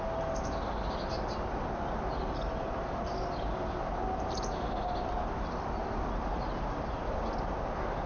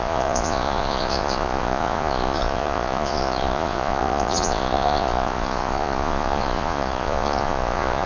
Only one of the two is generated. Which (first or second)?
second